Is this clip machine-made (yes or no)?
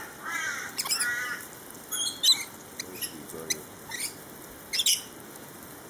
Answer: no